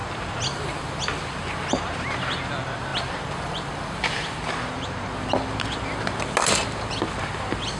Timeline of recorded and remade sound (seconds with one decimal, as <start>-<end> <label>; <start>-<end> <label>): 0.0-1.2 remade; 1.2-7.8 recorded